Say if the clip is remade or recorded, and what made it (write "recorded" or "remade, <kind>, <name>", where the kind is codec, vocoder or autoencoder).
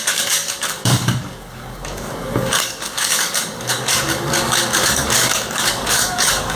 remade, codec, DAC